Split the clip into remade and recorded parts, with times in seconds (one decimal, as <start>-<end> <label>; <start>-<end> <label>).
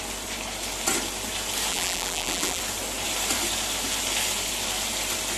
0.0-1.7 recorded; 1.7-2.6 remade; 2.6-5.4 recorded